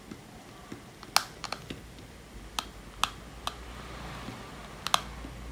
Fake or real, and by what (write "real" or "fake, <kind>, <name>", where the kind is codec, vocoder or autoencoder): real